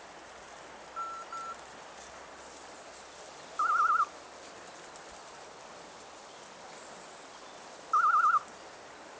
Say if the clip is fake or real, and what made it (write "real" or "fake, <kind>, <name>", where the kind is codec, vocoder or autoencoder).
real